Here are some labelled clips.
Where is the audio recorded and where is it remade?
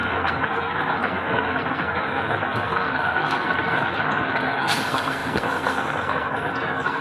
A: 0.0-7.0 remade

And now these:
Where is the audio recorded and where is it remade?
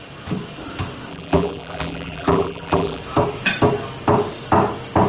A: 0.0-1.1 recorded; 1.1-3.0 remade; 3.0-5.1 recorded